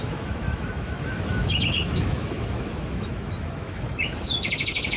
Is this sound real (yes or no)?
no